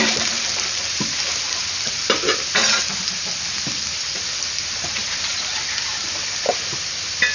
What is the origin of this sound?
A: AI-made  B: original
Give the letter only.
B